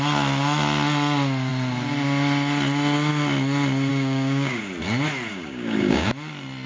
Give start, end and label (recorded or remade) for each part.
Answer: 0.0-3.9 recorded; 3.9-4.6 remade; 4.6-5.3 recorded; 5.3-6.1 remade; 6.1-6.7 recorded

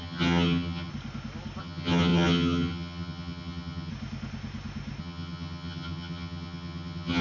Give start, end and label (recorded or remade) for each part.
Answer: 0.0-0.9 remade; 0.9-1.6 recorded; 1.6-3.9 remade; 3.9-5.0 recorded; 5.0-7.2 remade

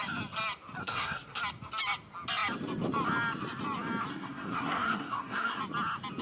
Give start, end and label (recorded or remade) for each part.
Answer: 0.0-0.8 recorded; 0.8-1.4 remade; 1.4-4.1 recorded; 4.1-5.6 remade; 5.6-6.2 recorded

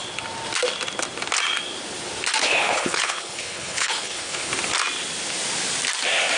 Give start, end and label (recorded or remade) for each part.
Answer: 0.0-2.4 recorded; 2.4-4.5 remade; 4.5-6.4 recorded

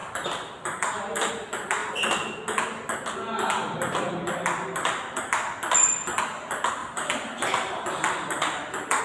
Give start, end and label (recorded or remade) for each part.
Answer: 0.0-1.3 remade; 1.3-6.8 recorded; 6.8-9.0 remade

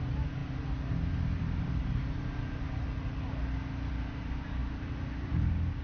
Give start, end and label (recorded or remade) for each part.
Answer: 0.0-5.8 recorded

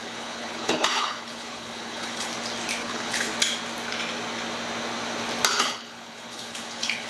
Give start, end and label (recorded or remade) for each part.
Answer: 0.0-2.3 remade; 2.3-2.8 recorded; 2.8-3.3 remade; 3.3-5.5 recorded; 5.5-7.1 remade